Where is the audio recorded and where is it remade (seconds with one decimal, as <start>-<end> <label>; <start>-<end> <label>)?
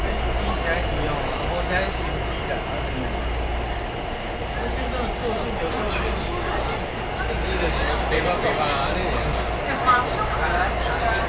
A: 0.0-11.3 recorded